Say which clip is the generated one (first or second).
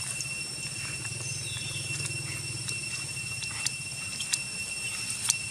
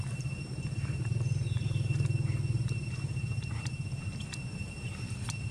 second